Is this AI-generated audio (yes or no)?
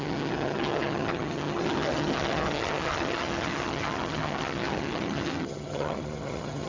yes